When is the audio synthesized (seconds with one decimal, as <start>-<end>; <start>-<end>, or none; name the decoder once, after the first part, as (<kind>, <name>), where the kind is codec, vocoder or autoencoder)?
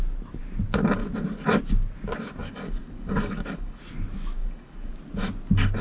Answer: 2.4-3.8 (codec, DAC); 4.4-4.9